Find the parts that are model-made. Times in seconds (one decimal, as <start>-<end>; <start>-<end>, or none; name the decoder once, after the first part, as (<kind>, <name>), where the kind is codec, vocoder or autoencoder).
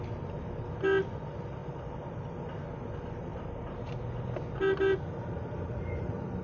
none